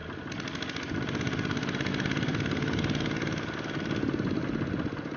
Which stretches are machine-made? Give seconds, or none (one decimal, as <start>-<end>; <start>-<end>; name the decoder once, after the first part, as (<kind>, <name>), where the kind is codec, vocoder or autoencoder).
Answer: none